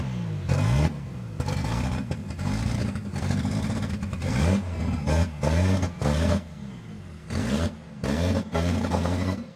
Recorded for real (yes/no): no